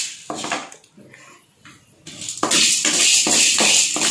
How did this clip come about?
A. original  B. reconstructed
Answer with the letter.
A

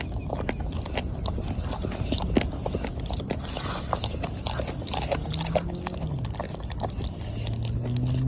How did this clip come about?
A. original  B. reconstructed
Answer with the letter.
A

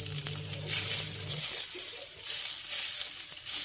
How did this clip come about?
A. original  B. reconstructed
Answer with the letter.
A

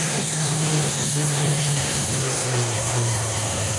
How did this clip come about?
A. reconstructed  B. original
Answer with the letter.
A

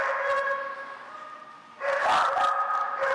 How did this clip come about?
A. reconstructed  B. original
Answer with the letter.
B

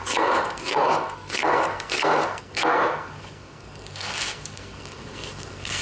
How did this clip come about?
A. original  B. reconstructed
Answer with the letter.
B